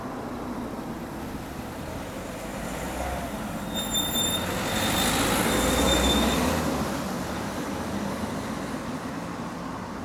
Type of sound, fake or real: real